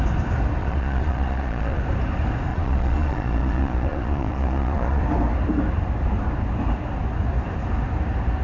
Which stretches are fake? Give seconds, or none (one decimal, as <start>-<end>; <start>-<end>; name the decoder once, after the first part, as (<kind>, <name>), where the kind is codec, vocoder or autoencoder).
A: 0.6-1.8 (vocoder, Vocos); 2.5-5.0